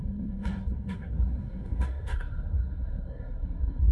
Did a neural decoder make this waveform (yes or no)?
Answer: yes